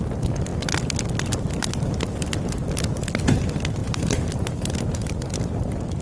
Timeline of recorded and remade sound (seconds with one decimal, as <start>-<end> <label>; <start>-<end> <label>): 0.0-3.8 recorded; 3.8-5.3 remade; 5.3-6.0 recorded